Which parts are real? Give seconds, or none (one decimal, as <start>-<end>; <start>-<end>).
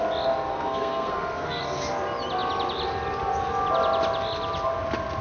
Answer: 0.0-0.5; 1.6-5.2